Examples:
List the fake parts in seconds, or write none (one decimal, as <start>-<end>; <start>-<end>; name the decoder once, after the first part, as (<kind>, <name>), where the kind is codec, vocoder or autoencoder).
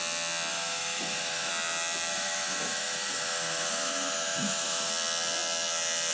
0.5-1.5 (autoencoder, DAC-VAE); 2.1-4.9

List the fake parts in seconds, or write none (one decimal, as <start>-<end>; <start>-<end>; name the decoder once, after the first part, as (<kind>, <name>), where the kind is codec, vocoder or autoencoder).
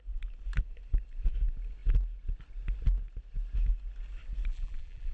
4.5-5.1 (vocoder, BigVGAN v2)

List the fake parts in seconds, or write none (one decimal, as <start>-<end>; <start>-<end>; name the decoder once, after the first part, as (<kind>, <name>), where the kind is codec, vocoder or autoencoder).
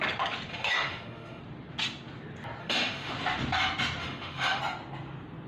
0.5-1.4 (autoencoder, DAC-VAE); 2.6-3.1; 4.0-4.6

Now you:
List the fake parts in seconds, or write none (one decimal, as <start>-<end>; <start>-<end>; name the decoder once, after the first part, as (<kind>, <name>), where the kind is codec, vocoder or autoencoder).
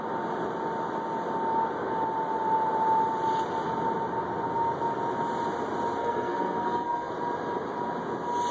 6.0-7.1 (codec, SNAC)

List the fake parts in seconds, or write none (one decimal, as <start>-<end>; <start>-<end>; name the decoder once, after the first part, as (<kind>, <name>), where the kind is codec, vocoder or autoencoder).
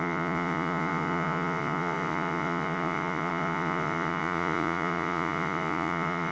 0.0-6.3 (vocoder, Vocos)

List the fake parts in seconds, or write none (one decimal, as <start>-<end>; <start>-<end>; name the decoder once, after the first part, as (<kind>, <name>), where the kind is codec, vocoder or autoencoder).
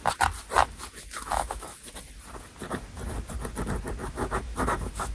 0.6-1.9 (autoencoder, DAC-VAE); 4.0-5.1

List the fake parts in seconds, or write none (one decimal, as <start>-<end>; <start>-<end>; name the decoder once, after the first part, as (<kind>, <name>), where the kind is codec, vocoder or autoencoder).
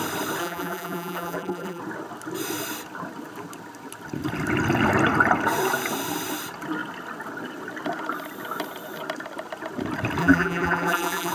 0.4-1.8 (vocoder, BigVGAN v2); 10.2-11.3